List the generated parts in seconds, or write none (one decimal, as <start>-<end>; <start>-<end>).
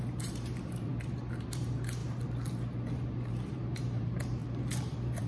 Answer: 0.0-0.9; 1.4-2.0; 2.9-5.3